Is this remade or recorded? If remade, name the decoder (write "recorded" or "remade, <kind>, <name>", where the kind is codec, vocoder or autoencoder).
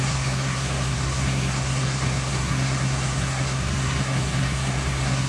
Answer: remade, codec, SNAC